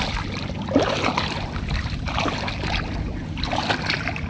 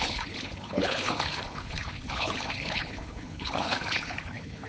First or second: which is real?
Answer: first